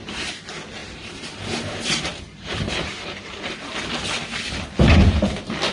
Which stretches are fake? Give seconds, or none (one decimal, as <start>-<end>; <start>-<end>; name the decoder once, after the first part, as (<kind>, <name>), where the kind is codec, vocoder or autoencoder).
0.8-3.6 (vocoder, BigVGAN v2)